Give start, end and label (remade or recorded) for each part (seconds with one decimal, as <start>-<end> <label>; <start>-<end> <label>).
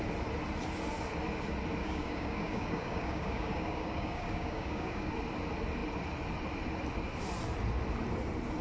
0.0-1.8 recorded; 1.8-5.1 remade; 5.1-8.6 recorded